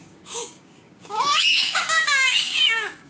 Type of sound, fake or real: fake